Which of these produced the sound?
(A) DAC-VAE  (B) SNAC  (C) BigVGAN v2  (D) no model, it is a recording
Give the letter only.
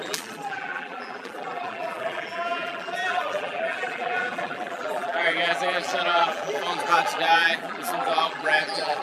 C